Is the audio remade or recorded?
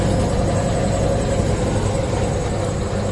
recorded